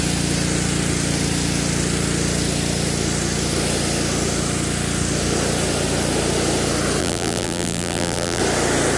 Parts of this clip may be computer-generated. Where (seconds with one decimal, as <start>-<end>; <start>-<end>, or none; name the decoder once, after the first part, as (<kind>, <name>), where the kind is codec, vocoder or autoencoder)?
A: 7.0-8.4 (vocoder, BigVGAN v2)